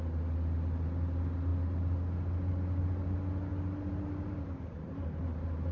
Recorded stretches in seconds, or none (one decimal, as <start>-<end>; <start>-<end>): 0.0-5.7